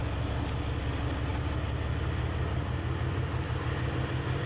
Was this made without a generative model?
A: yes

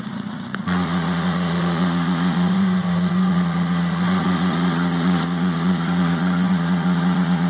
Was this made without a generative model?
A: no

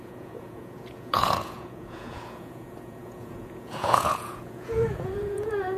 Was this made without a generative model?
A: no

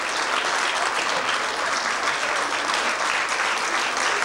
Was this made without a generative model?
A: yes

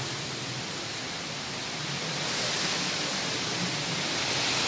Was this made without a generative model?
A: yes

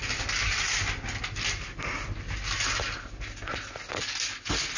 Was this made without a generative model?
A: yes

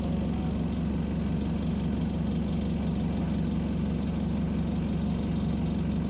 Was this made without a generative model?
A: yes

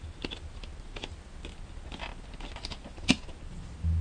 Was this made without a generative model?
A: yes